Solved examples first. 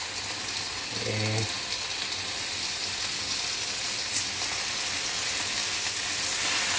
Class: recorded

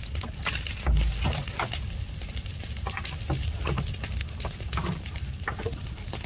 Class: recorded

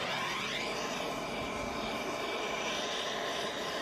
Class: recorded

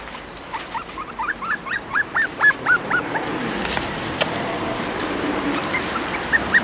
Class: remade